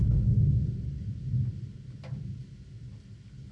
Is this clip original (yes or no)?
yes